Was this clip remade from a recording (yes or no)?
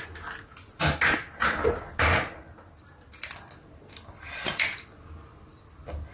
no